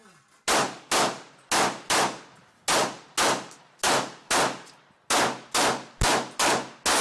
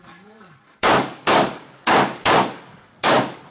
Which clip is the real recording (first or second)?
first